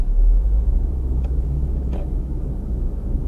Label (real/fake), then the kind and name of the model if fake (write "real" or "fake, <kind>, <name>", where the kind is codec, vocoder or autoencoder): fake, codec, DAC